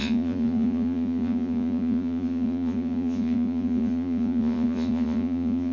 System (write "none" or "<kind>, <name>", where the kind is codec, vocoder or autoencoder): vocoder, Vocos